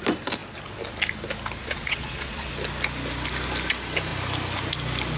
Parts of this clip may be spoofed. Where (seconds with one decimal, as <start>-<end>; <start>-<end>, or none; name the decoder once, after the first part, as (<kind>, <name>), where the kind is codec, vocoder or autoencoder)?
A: 1.6-2.5 (vocoder, Vocos)

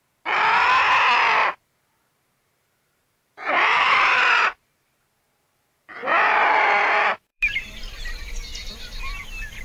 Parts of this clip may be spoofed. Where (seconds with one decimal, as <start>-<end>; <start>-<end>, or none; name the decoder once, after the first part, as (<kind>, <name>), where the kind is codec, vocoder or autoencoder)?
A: 1.4-6.5 (vocoder, BigVGAN v2); 7.3-8.0; 8.5-9.1

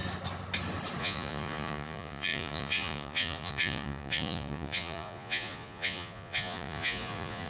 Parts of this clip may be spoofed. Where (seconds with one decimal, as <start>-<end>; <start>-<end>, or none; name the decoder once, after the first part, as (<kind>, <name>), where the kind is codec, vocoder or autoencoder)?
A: 1.0-7.5 (vocoder, Vocos)

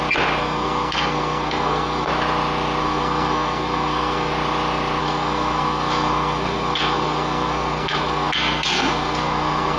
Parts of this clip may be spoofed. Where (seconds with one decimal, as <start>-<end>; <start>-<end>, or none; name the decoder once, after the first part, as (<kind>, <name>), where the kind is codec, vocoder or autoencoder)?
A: 0.4-2.1 (codec, SNAC); 2.8-4.3; 5.0-9.8

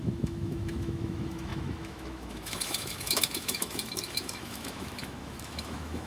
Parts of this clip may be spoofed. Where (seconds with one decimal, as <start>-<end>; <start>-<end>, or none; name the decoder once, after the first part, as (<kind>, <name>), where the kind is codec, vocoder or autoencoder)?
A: 0.0-6.1 (autoencoder, DAC-VAE)